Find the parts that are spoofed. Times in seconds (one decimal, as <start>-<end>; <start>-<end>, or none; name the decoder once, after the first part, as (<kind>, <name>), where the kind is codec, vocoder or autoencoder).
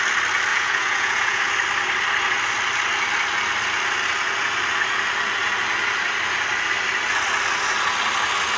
0.5-1.4 (vocoder, Vocos)